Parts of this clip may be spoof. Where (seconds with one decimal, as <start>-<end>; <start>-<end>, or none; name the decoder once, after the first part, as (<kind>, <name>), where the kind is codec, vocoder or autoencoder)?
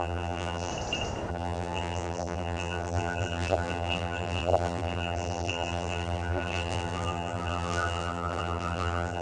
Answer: 0.0-0.7 (vocoder, BigVGAN v2); 1.3-9.2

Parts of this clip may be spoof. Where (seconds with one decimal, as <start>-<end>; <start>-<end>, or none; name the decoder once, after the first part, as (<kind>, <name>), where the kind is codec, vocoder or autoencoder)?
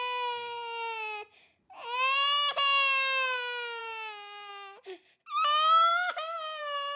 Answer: 3.8-4.5 (codec, DAC)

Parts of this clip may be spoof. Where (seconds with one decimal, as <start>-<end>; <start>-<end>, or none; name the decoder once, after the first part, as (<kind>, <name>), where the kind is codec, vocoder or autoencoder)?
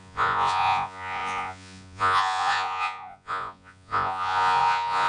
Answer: 0.0-5.1 (vocoder, Vocos)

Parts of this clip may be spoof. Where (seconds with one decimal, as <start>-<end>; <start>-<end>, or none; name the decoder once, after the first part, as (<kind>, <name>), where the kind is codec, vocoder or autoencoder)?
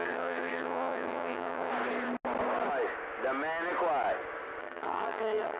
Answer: 0.0-1.7 (vocoder, HiFi-GAN); 4.6-5.6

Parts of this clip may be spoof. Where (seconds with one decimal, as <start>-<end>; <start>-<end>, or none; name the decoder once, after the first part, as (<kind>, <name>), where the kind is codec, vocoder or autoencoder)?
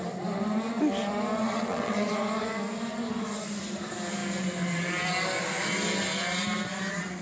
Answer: 1.4-2.1 (vocoder, WaveNeXt)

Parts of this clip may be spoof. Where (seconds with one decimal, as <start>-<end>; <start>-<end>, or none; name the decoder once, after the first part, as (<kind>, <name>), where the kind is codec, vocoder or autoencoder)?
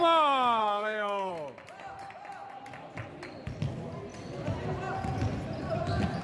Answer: 0.6-1.3 (codec, SNAC)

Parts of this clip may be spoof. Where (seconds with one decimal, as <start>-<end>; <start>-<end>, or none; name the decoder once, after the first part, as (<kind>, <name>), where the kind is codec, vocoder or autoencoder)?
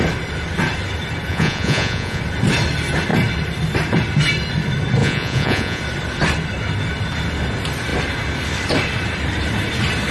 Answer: 1.3-2.2 (vocoder, Vocos); 5.0-5.8